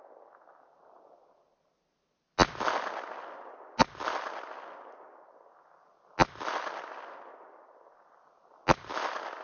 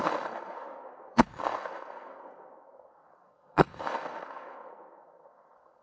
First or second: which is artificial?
second